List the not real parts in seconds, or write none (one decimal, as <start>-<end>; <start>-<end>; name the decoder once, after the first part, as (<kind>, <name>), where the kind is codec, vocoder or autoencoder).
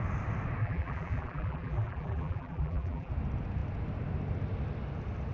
0.6-3.1 (vocoder, BigVGAN v2)